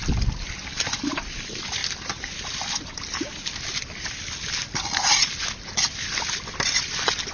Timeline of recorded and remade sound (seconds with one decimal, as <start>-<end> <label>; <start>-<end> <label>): 0.0-7.3 recorded